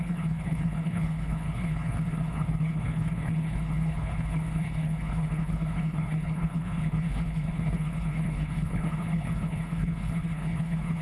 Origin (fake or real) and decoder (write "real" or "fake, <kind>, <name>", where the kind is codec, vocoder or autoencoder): fake, codec, HILCodec